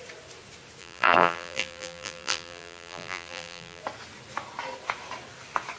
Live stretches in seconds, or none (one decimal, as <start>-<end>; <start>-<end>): 0.0-0.8; 3.8-5.8